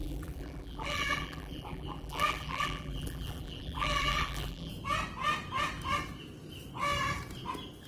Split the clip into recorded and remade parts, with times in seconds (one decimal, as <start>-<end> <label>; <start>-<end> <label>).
0.0-4.7 remade; 4.7-7.9 recorded